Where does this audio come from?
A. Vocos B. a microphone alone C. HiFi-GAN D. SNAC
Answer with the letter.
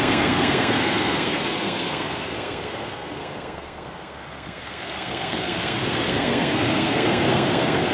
D